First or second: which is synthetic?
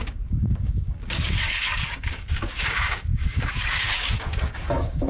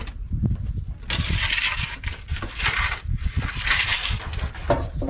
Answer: first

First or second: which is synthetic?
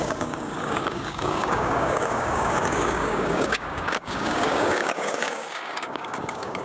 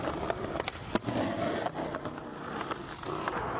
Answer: first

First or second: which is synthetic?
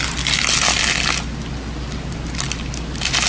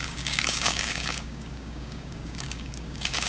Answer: second